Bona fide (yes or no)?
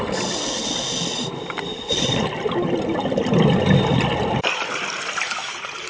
yes